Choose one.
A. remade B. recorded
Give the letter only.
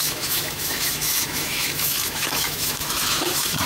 A